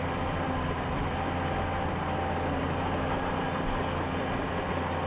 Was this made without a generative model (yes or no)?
yes